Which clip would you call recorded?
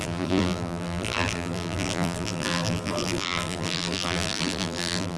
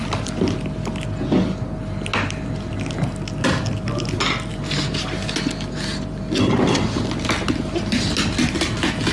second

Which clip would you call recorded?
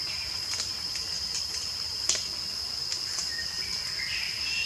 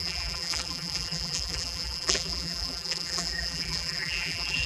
first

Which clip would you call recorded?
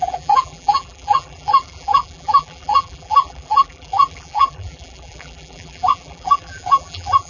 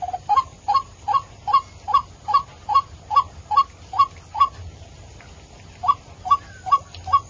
second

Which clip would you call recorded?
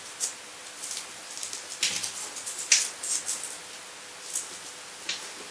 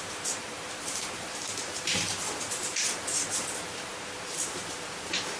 first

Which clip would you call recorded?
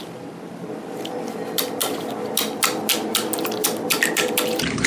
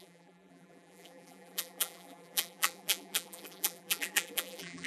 first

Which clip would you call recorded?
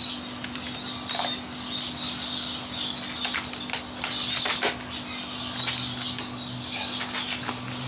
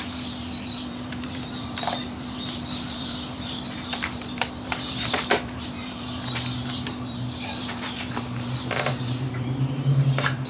first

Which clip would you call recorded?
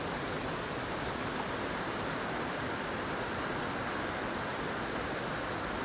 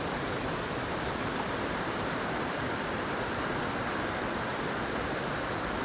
first